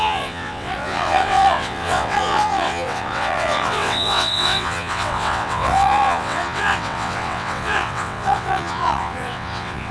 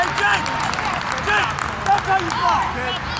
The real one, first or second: second